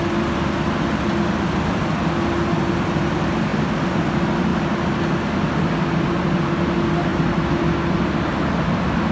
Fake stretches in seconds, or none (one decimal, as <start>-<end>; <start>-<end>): none